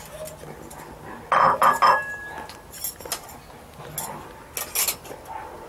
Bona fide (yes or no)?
yes